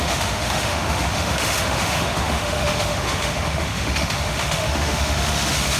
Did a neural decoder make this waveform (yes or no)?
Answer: yes